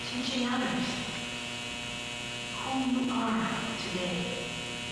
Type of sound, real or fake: real